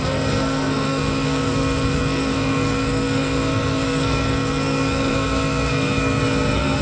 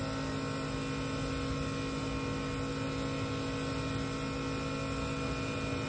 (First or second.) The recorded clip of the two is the second